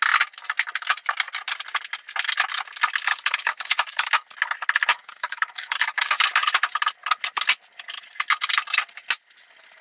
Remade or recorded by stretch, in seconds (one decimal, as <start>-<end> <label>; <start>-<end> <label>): 0.0-3.1 recorded; 3.1-4.1 remade; 4.1-4.9 recorded; 4.9-6.2 remade; 6.2-9.8 recorded